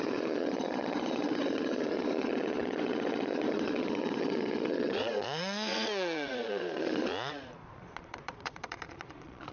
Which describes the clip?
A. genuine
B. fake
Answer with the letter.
B